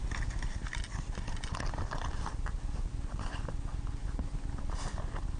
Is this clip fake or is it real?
real